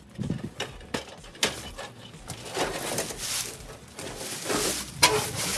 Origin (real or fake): real